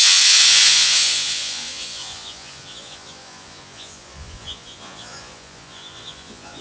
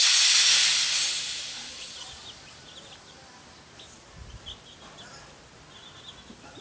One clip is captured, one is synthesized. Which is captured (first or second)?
second